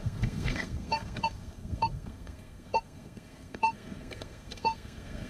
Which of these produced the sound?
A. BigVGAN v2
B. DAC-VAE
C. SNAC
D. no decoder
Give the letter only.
C